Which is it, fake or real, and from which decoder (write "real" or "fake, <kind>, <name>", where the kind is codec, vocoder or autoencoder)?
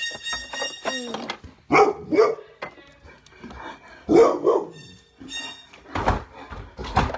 real